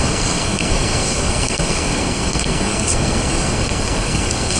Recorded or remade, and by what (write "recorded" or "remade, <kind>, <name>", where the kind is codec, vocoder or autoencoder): remade, codec, SNAC